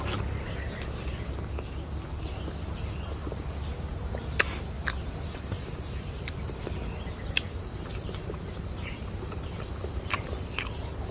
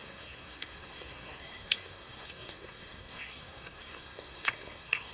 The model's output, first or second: second